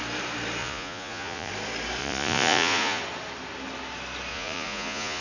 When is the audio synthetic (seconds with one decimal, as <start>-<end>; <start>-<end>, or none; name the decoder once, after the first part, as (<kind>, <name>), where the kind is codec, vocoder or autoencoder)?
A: 0.6-1.5 (vocoder, Vocos); 2.0-3.0; 4.3-5.2